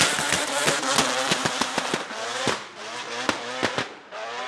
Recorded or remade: recorded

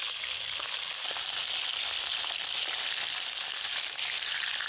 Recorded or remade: recorded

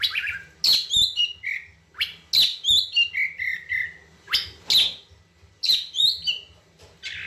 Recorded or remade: recorded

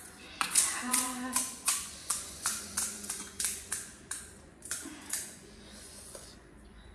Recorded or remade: remade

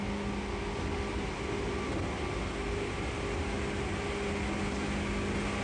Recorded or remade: recorded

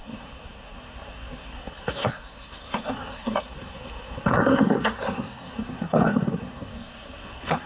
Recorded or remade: remade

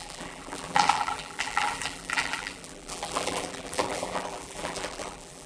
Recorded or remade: remade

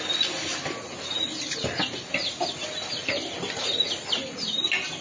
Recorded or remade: recorded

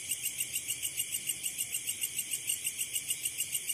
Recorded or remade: recorded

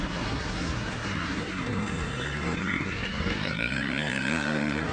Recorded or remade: remade